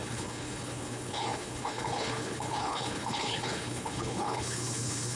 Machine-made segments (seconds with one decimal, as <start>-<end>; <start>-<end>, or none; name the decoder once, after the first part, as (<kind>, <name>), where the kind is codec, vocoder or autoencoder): 0.0-5.2 (codec, HILCodec)